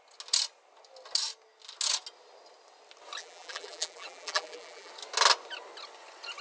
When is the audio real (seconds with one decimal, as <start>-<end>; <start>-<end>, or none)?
0.0-3.2; 4.9-6.4